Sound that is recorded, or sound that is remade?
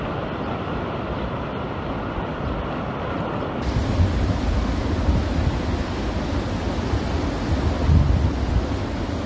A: recorded